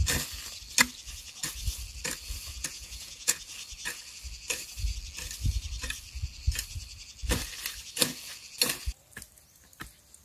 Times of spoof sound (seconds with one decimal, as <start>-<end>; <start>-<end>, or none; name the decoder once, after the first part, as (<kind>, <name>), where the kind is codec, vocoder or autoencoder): 2.7-3.4 (vocoder, Vocos)